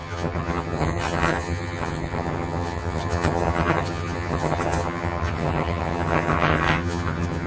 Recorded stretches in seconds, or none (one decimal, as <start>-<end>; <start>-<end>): none